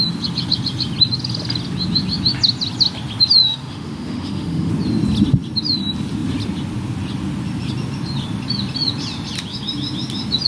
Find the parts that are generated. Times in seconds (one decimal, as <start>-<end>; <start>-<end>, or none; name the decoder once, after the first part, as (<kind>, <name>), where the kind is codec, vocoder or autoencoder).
3.4-4.7 (autoencoder, DAC-VAE)